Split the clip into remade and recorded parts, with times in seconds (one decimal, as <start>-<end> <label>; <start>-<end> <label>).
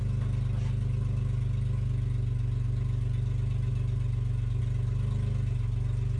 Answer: 0.0-6.2 recorded